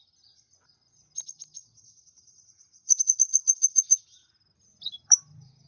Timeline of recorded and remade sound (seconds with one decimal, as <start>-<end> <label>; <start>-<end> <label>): 0.0-1.6 recorded; 1.6-4.3 remade; 4.3-5.7 recorded